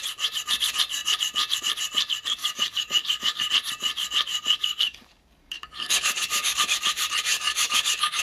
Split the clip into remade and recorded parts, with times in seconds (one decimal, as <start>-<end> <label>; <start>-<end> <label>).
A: 0.0-2.4 recorded; 2.4-3.5 remade; 3.5-4.6 recorded; 4.6-6.6 remade; 6.6-7.3 recorded; 7.3-8.2 remade